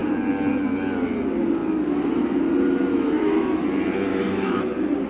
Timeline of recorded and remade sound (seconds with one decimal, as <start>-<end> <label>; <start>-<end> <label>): 0.0-2.9 recorded; 2.9-3.6 remade; 3.6-4.1 recorded; 4.1-4.6 remade; 4.6-5.1 recorded